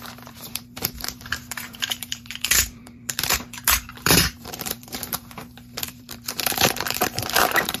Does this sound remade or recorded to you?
remade